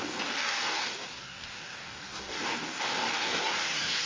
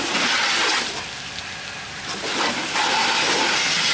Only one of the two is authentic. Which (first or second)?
second